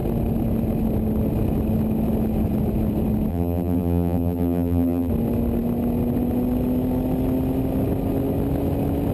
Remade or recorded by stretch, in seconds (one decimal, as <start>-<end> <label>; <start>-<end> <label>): 0.0-3.3 recorded; 3.3-5.1 remade; 5.1-9.1 recorded

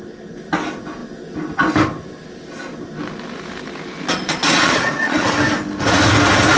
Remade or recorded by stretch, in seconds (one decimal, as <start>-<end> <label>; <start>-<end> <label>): 0.0-4.1 recorded; 4.1-5.3 remade; 5.3-6.6 recorded